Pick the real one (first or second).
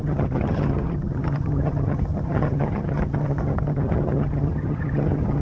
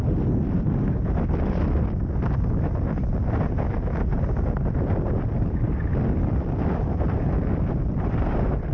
second